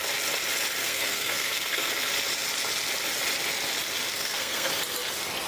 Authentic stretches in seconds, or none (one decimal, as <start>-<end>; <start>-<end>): 0.0-0.8; 1.9-4.1; 4.7-5.5